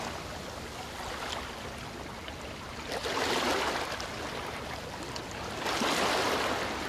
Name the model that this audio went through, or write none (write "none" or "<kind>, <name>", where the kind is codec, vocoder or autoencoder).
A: none